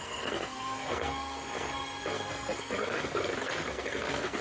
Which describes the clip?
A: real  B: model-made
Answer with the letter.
B